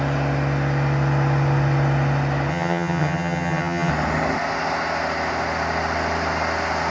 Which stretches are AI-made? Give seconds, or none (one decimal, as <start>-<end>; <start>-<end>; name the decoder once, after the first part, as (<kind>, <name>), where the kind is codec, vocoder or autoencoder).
2.5-3.9 (vocoder, HiFi-GAN)